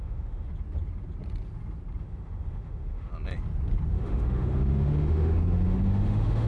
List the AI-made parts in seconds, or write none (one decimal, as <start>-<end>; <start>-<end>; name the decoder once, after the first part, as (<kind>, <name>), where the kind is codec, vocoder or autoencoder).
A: 0.0-0.5 (autoencoder, DAC-VAE); 2.0-3.1; 3.9-6.5